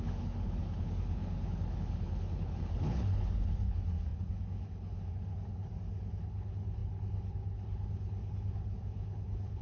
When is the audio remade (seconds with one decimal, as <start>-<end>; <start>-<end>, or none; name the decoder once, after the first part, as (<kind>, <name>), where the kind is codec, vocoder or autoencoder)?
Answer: 0.0-5.7 (codec, HILCodec); 6.2-9.6